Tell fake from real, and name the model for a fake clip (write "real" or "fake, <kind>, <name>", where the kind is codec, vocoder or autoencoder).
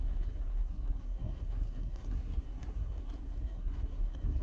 fake, codec, SNAC